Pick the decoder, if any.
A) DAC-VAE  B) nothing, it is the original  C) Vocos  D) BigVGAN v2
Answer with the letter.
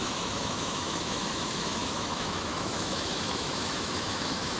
A